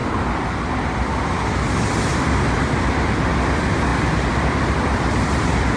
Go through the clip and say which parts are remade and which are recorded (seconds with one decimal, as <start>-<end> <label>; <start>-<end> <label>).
0.0-5.8 recorded